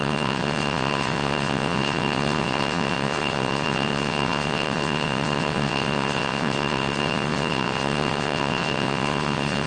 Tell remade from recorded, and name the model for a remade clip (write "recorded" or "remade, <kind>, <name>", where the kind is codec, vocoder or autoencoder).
remade, vocoder, WaveNeXt